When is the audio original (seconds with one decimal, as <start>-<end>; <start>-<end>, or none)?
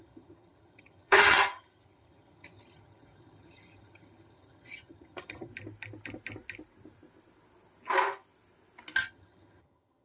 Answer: 5.5-9.1